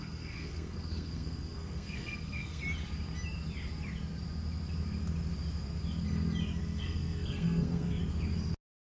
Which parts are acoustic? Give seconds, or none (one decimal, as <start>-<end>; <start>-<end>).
2.6-6.6; 8.0-8.8